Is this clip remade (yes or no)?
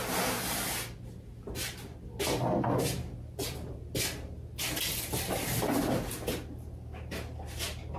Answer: no